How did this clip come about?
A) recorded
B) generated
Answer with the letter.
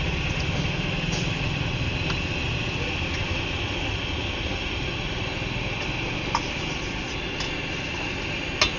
A